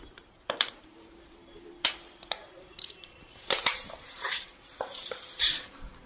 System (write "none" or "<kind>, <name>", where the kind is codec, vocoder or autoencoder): vocoder, BigVGAN v2